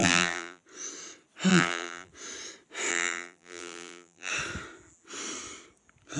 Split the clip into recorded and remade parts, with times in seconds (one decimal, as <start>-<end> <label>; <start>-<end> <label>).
0.0-0.6 remade; 0.6-1.5 recorded; 1.5-2.1 remade; 2.1-2.9 recorded; 2.9-4.3 remade; 4.3-6.2 recorded